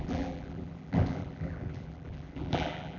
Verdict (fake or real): fake